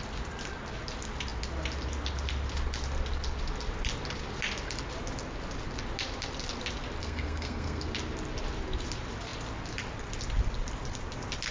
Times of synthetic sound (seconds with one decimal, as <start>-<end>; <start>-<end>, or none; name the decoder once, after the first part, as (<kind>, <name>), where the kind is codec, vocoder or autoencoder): 7.0-7.8 (codec, SNAC)